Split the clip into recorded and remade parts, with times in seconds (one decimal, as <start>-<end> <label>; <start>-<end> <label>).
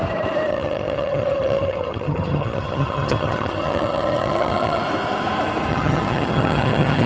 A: 0.0-0.5 recorded; 0.5-4.8 remade; 4.8-5.7 recorded; 5.7-7.1 remade